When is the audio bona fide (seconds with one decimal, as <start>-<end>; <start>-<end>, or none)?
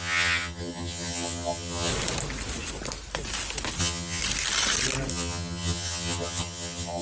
1.9-3.8; 4.2-5.1